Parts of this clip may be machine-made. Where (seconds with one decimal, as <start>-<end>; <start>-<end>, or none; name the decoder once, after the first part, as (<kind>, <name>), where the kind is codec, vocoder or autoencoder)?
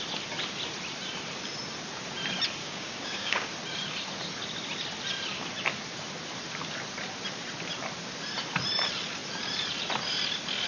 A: 2.6-3.5 (codec, DAC)